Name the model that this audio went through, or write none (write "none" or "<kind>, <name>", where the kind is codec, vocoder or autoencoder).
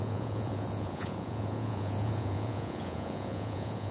vocoder, Vocos